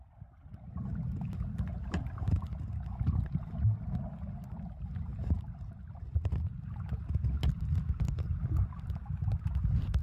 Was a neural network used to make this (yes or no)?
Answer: no